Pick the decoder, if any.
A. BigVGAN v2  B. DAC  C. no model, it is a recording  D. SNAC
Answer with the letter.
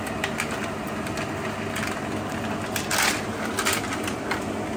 C